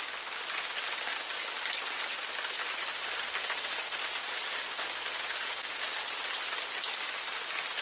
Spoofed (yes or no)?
no